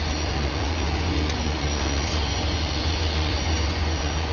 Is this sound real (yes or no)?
no